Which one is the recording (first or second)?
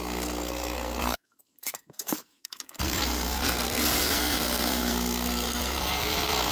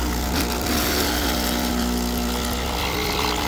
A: second